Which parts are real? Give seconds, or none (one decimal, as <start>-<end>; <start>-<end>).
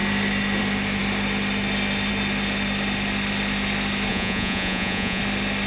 0.0-4.1; 5.2-5.7